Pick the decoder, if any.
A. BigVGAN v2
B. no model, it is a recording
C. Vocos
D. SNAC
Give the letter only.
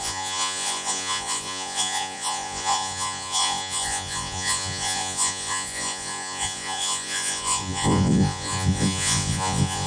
C